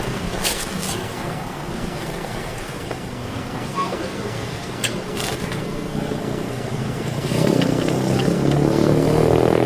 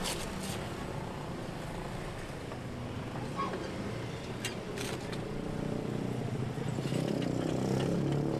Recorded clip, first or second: second